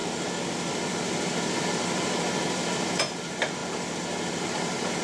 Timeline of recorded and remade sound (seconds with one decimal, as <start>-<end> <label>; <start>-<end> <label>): 0.0-3.0 remade; 3.0-5.0 recorded